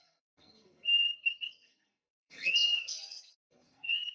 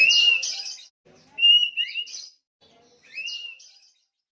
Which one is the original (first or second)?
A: second